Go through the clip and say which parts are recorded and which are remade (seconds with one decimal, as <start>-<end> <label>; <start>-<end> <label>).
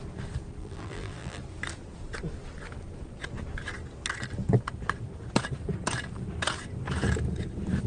0.0-0.6 recorded; 0.6-1.4 remade; 1.4-7.9 recorded